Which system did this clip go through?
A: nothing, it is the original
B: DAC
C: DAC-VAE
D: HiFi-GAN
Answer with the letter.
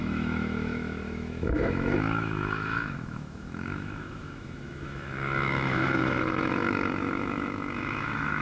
C